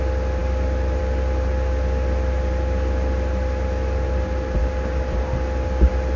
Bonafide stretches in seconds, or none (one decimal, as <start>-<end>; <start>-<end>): 0.0-6.2